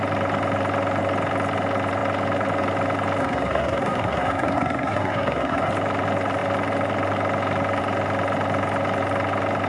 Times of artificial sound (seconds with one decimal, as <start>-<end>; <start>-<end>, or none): 3.2-5.7